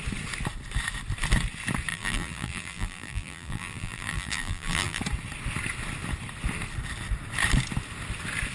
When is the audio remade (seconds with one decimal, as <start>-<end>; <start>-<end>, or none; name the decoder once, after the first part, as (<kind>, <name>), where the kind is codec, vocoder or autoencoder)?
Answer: 1.9-5.0 (vocoder, BigVGAN v2)